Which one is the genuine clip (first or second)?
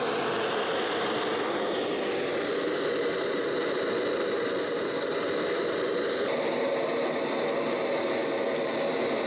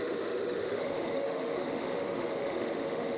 first